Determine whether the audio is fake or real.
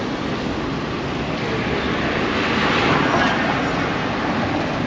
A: real